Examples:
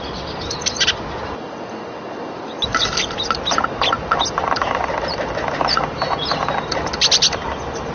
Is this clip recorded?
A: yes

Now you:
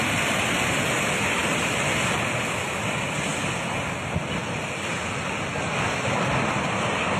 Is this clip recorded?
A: yes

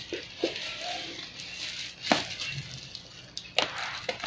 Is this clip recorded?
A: yes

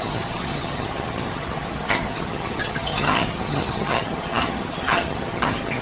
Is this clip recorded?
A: no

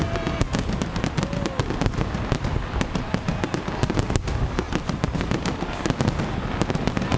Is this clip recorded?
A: yes